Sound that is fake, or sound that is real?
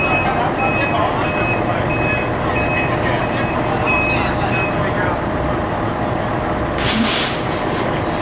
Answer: real